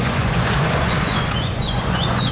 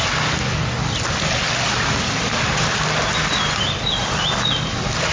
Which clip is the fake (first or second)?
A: first